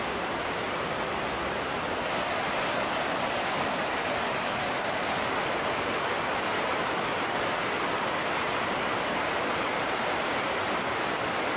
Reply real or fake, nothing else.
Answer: real